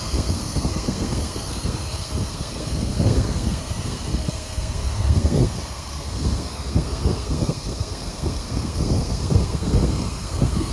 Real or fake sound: fake